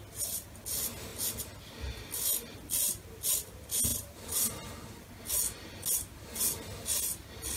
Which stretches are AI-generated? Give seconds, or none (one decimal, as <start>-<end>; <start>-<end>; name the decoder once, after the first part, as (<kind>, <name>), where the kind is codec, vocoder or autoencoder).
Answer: 3.9-4.9 (vocoder, BigVGAN v2)